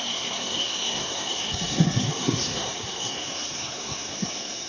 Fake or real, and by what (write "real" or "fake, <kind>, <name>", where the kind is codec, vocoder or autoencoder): fake, codec, SNAC